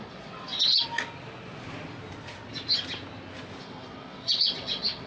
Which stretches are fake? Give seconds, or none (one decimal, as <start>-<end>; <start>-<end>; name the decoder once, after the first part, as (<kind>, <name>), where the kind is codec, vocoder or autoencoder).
0.0-0.5 (vocoder, WaveNeXt); 3.6-5.1